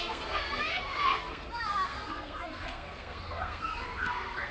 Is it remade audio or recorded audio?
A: remade